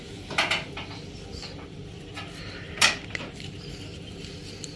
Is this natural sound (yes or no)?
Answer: yes